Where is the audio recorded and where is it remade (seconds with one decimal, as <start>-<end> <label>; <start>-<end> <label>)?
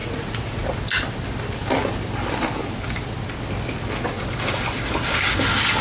0.0-0.7 remade; 0.7-5.8 recorded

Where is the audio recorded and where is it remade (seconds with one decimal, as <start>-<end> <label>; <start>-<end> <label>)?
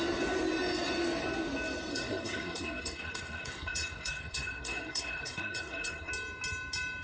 0.0-1.9 recorded; 1.9-6.1 remade; 6.1-7.0 recorded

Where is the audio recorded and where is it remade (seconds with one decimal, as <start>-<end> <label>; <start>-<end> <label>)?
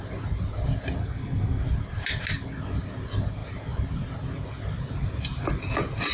0.0-1.0 recorded; 1.0-1.6 remade; 1.6-6.1 recorded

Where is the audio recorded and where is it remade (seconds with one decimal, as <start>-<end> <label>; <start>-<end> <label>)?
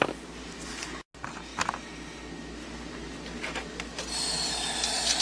0.0-5.2 recorded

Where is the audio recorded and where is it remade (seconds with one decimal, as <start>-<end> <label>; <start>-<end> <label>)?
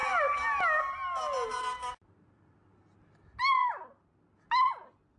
0.0-5.2 recorded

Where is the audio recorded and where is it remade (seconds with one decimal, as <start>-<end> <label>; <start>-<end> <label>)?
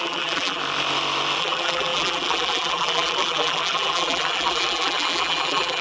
0.0-0.6 remade; 0.6-1.4 recorded; 1.4-5.8 remade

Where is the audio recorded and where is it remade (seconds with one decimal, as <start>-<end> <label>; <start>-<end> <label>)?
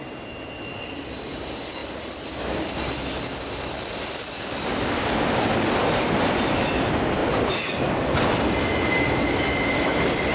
0.0-10.3 recorded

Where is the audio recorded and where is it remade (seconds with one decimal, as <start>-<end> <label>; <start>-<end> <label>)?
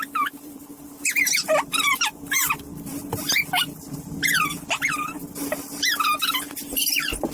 0.0-7.3 remade